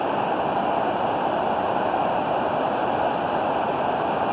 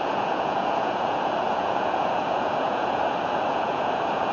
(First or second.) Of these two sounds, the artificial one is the second